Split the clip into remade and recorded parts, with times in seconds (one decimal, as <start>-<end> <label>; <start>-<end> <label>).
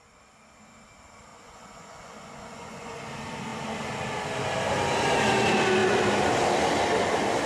0.0-1.3 recorded; 1.3-3.0 remade; 3.0-7.5 recorded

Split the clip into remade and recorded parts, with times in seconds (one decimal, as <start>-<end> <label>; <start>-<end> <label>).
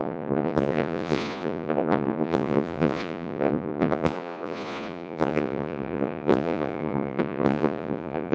0.0-8.3 remade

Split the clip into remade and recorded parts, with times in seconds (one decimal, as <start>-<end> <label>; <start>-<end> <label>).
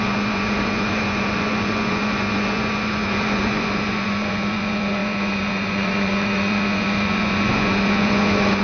0.0-8.6 remade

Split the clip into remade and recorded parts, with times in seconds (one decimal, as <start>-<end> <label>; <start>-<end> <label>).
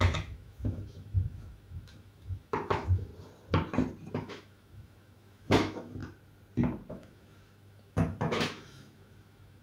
0.0-3.1 remade; 3.1-4.1 recorded; 4.1-6.0 remade; 6.0-6.9 recorded; 6.9-9.6 remade